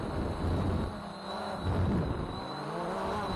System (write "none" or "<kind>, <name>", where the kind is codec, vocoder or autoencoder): vocoder, BigVGAN v2